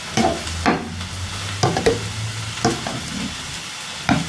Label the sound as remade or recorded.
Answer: recorded